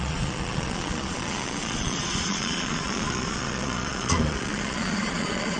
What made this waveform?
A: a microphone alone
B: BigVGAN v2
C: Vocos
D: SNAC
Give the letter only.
C